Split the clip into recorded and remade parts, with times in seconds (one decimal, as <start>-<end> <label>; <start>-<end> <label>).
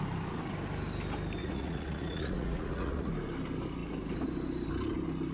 0.0-1.4 recorded; 1.4-3.1 remade; 3.1-5.3 recorded